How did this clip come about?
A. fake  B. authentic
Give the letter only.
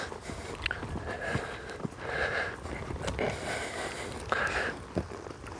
B